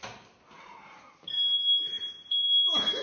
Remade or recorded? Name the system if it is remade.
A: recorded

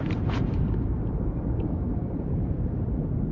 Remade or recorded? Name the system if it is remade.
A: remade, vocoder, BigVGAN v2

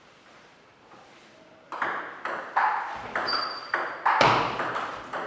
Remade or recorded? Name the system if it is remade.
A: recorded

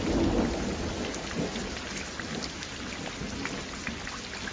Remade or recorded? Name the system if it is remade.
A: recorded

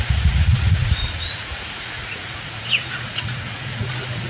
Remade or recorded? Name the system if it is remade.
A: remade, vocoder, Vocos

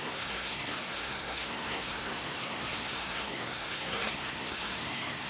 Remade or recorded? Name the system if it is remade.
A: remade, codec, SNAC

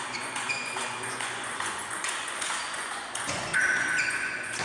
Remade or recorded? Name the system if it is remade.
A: remade, vocoder, Vocos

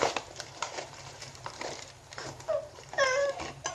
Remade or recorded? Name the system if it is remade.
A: remade, vocoder, BigVGAN v2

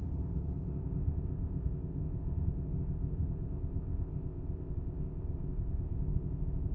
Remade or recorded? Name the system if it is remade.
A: remade, codec, ZipCodec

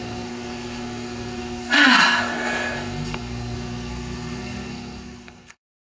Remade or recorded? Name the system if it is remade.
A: remade, codec, SNAC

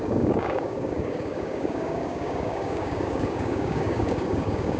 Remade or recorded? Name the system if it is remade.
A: remade, codec, DAC